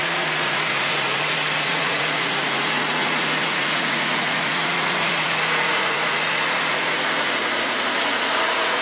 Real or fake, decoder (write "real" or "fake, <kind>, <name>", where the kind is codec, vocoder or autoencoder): fake, vocoder, Vocos